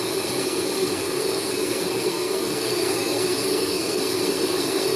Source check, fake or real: fake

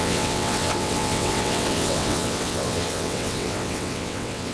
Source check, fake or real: fake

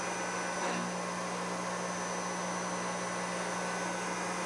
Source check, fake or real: real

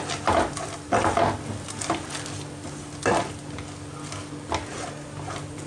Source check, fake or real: real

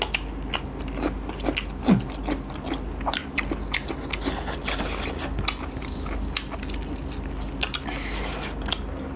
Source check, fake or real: real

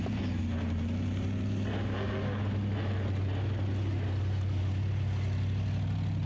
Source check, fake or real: real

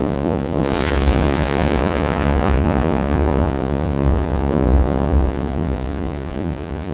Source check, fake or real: fake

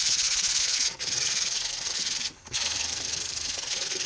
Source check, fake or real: fake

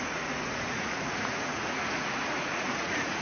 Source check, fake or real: fake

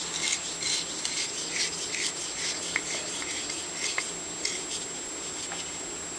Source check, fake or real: real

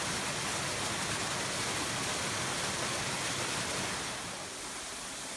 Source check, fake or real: real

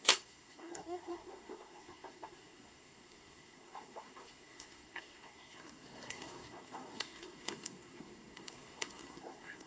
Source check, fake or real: fake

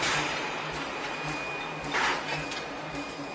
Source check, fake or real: real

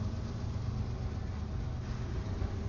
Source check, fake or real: real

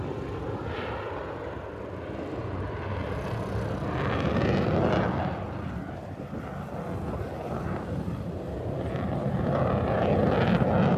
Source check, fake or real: real